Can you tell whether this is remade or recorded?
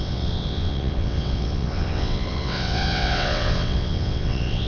remade